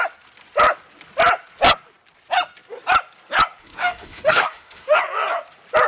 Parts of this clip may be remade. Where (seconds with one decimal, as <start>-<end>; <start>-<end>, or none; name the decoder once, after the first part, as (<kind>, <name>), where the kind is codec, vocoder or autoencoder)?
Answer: 3.6-5.0 (autoencoder, DAC-VAE)